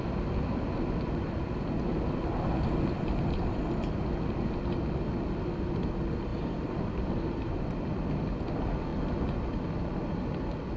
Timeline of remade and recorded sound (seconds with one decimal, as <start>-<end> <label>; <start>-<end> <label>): 0.0-6.3 recorded; 6.3-7.6 remade; 7.6-10.8 recorded